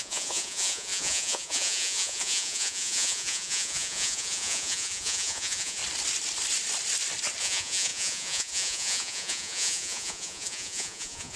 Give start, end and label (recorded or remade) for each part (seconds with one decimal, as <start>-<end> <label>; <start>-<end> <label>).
0.0-5.8 remade; 5.8-7.4 recorded; 7.4-11.4 remade